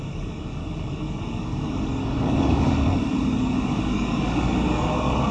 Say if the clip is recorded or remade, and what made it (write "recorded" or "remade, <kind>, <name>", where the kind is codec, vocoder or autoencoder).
remade, codec, DAC